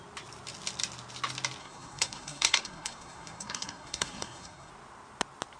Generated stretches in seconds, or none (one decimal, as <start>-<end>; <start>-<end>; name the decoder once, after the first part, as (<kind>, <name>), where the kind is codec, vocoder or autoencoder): 1.6-4.7 (codec, SNAC)